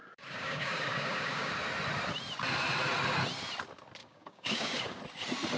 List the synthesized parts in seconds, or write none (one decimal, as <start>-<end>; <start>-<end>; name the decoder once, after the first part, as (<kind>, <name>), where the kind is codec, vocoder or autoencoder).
0.0-1.5 (codec, DAC); 4.0-5.0